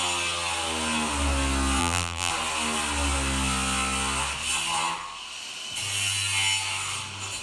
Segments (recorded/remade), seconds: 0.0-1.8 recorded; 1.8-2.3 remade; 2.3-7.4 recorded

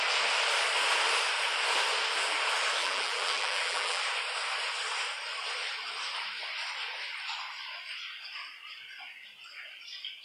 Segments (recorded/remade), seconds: 0.0-2.8 recorded; 2.8-4.0 remade; 4.0-10.2 recorded